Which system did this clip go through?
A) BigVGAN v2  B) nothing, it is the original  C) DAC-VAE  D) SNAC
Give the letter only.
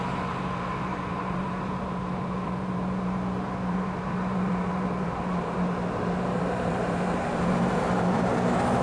A